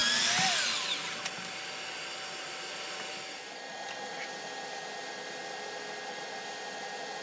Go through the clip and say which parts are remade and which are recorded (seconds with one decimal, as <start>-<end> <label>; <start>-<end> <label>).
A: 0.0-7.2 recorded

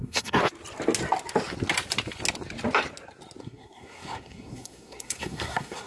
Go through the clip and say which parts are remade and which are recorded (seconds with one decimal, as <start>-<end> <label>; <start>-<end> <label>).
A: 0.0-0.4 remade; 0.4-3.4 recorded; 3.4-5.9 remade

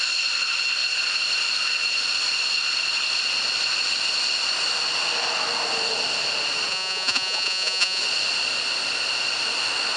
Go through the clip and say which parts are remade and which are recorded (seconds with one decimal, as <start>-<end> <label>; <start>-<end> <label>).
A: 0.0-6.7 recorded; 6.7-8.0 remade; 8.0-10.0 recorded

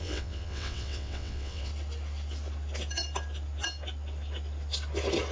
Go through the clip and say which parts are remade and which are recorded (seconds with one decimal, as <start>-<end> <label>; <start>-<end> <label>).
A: 0.0-1.7 remade; 1.7-5.3 recorded